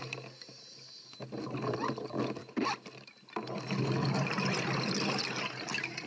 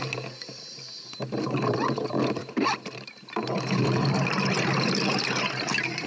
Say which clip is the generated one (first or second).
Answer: second